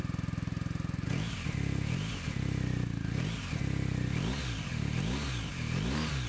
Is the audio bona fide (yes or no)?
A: yes